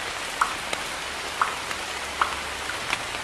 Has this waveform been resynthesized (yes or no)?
no